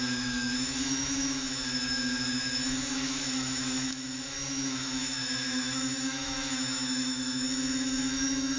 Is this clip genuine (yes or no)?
no